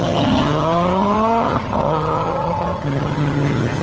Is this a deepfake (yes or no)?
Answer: yes